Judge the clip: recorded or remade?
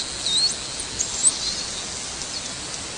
recorded